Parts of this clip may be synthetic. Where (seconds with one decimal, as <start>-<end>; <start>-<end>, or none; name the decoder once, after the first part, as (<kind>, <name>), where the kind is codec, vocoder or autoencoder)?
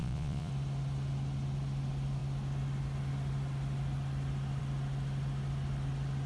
0.0-0.5 (vocoder, Vocos)